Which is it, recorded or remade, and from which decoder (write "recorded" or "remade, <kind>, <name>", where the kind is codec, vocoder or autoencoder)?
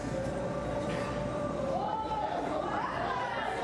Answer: remade, vocoder, BigVGAN v2